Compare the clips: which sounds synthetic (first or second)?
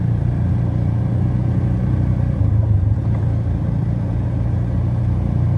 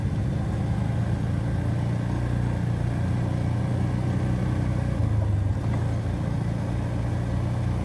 first